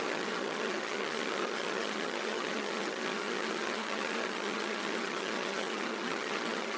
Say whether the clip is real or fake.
fake